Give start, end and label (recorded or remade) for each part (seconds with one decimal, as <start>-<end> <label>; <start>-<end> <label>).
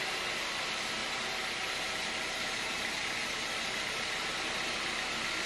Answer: 0.0-5.5 recorded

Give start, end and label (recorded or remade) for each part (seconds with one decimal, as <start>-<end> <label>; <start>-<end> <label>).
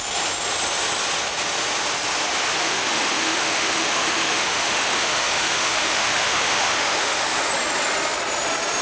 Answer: 0.0-2.6 recorded; 2.6-7.5 remade; 7.5-8.8 recorded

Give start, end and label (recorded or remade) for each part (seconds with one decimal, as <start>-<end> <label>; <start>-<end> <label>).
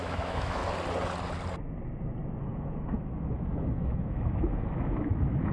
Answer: 0.0-0.6 remade; 0.6-2.4 recorded; 2.4-5.5 remade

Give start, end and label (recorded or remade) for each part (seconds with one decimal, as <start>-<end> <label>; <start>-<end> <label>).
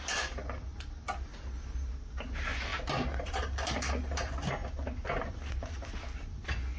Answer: 0.0-6.8 recorded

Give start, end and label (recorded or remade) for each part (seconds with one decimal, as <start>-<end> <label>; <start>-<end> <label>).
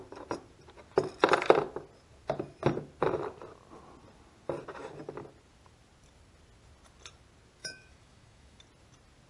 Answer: 0.0-7.6 recorded; 7.6-8.6 remade; 8.6-9.3 recorded